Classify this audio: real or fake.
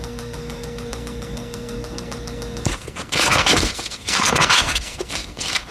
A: fake